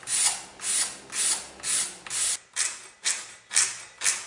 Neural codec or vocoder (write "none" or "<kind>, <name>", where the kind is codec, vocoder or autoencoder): none